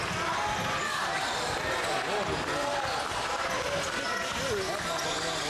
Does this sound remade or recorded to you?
recorded